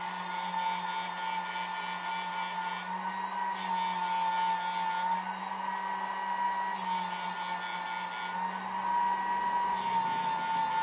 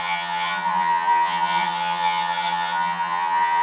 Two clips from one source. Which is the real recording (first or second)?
first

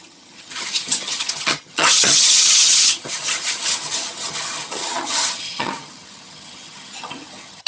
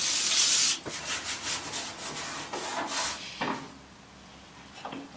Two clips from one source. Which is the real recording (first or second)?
second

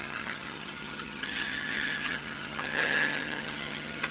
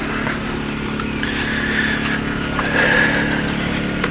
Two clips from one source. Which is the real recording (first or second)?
second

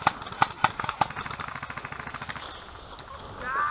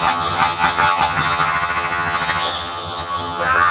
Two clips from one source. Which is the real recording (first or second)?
first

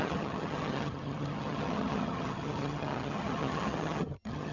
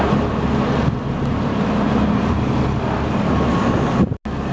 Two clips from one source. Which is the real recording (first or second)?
second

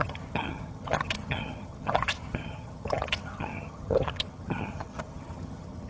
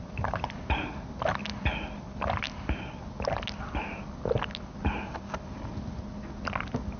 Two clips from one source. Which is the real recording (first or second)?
second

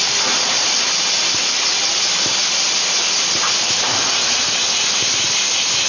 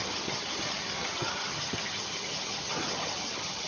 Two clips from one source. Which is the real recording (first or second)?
first